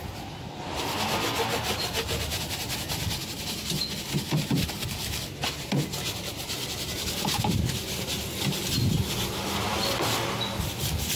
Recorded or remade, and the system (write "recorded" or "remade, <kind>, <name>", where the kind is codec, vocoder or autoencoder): recorded